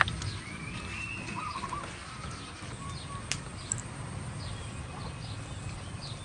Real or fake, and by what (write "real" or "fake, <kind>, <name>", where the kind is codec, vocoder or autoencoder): fake, vocoder, BigVGAN v2